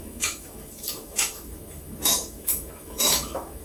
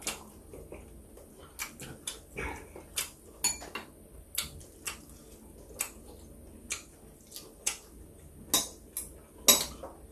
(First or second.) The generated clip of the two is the first